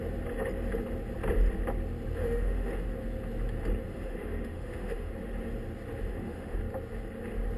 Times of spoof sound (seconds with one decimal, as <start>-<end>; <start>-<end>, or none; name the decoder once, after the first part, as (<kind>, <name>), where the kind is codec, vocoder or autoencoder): 2.2-2.7 (autoencoder, DAC-VAE); 3.9-5.1; 6.1-6.6